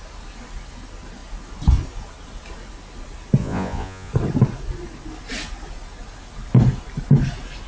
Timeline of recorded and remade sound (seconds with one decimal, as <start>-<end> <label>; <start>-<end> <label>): 0.0-3.4 recorded; 3.4-4.1 remade; 4.1-7.7 recorded